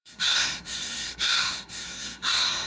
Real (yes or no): no